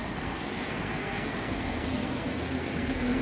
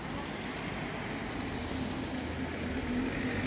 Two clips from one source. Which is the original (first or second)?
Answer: second